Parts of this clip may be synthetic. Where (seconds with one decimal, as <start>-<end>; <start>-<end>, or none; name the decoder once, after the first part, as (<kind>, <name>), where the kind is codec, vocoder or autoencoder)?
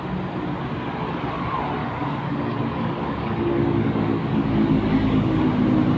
1.8-5.4 (codec, DAC)